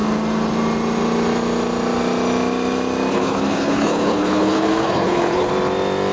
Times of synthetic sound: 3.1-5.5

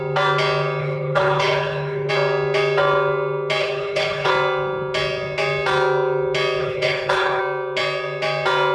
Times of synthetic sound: 0.8-2.1; 3.6-4.3; 6.6-7.4

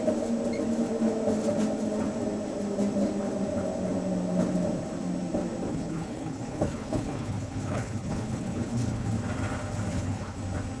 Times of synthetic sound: 5.7-9.1; 9.9-10.4

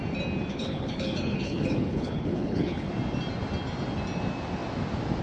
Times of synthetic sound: 0.5-2.9

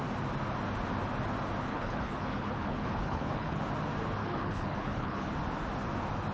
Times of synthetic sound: 1.7-3.6; 4.2-5.3